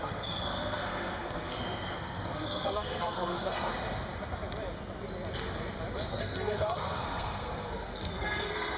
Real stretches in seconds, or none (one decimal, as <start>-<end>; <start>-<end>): 3.7-6.1